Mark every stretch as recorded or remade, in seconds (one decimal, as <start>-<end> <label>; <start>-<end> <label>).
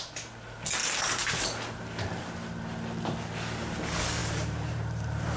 0.0-0.8 recorded; 0.8-1.4 remade; 1.4-4.2 recorded; 4.2-5.4 remade